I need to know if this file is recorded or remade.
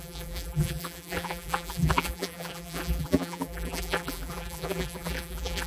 remade